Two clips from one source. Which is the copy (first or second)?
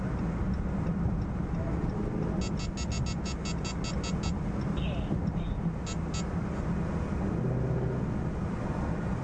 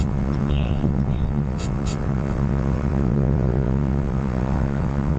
second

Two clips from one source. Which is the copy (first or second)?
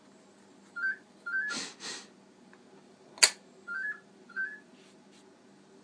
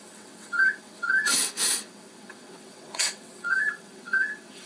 second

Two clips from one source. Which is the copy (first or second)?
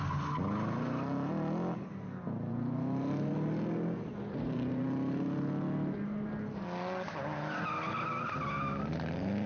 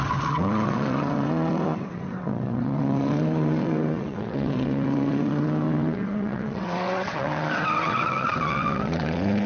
second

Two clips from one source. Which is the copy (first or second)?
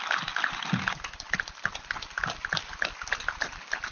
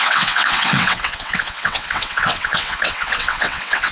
second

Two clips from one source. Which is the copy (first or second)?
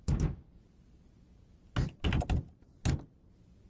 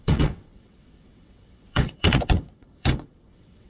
second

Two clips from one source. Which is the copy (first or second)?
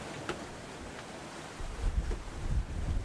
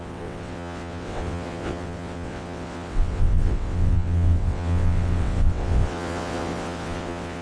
second